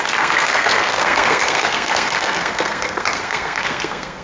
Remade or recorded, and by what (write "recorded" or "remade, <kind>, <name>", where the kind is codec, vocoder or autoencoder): remade, codec, SNAC